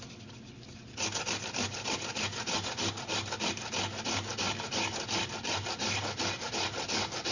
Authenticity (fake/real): real